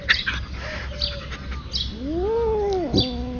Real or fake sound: real